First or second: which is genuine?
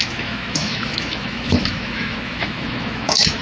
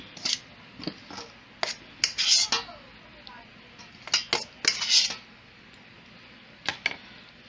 second